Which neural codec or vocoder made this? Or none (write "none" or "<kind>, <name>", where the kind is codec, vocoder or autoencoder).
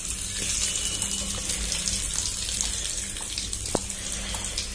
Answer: none